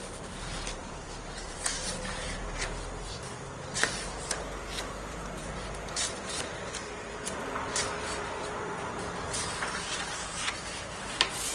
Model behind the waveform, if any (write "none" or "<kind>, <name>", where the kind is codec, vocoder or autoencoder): vocoder, BigVGAN v2